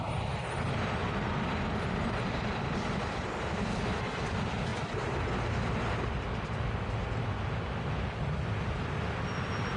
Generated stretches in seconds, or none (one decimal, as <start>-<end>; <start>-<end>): none